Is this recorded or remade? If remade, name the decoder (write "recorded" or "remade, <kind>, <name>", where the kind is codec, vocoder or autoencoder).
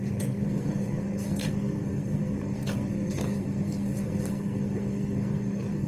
remade, codec, SNAC